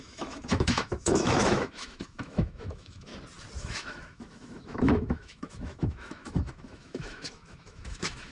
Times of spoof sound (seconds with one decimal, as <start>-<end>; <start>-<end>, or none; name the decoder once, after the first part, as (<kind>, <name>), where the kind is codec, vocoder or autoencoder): 0.0-3.1 (autoencoder, DAC-VAE); 3.6-8.3